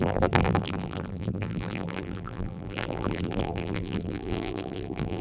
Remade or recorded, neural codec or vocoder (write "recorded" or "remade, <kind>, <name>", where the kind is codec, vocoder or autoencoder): remade, vocoder, BigVGAN v2